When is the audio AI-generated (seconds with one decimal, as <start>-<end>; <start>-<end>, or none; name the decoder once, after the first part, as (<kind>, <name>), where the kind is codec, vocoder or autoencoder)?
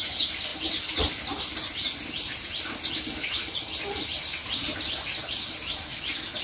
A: none